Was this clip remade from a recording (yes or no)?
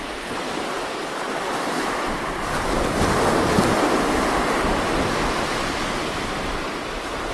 no